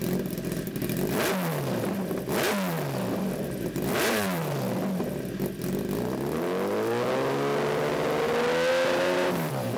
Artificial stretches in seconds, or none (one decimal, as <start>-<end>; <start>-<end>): 8.7-9.8

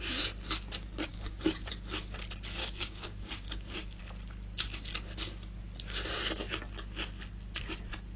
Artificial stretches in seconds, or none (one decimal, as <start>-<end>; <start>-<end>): 1.1-1.7; 2.6-4.0

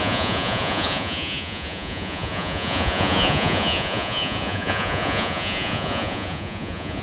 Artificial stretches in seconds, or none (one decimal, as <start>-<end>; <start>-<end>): 0.0-7.0

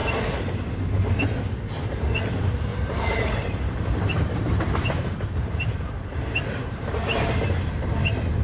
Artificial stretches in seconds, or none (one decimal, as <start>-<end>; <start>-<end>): 0.0-0.8; 2.7-6.9

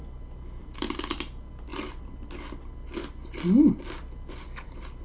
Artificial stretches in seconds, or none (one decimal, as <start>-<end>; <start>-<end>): none

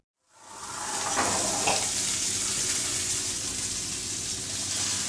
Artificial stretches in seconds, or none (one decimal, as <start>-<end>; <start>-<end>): 2.5-3.4